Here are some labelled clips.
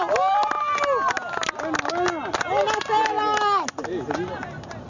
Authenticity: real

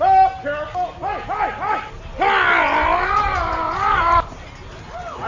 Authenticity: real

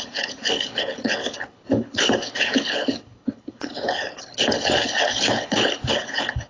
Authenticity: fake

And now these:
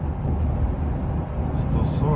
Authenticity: real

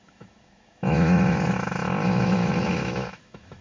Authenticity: fake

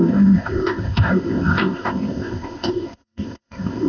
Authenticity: fake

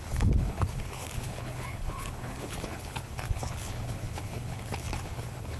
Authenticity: fake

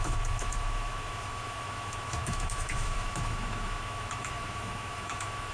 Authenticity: fake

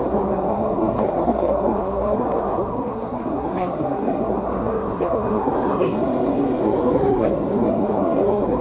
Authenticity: fake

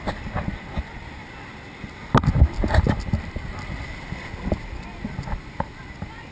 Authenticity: real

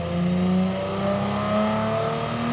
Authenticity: real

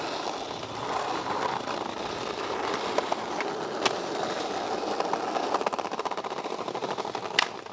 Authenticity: real